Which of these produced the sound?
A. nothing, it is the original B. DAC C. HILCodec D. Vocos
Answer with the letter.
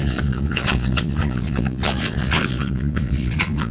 D